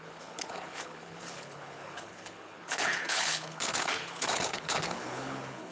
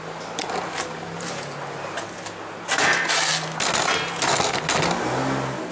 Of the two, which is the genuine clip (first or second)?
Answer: second